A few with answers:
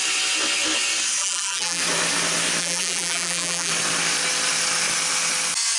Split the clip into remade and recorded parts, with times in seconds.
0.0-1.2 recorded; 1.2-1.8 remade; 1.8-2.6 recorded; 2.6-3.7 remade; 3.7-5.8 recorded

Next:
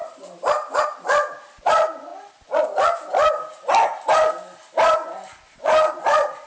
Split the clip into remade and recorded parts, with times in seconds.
0.0-6.5 recorded